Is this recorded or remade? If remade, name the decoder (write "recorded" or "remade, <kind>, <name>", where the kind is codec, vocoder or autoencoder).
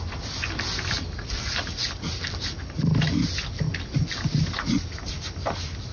recorded